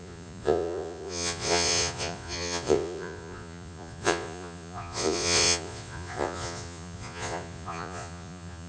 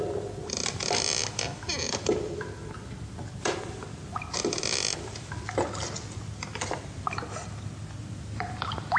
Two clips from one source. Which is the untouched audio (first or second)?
second